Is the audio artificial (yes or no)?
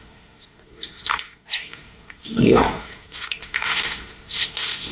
yes